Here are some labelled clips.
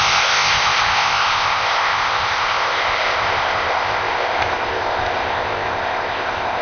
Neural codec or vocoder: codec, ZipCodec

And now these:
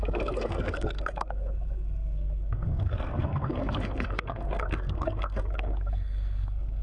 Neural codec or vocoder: codec, SNAC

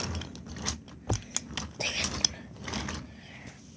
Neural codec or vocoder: none